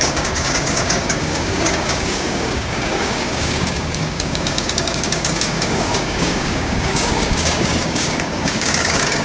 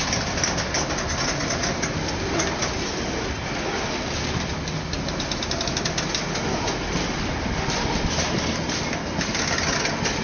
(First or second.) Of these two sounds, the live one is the second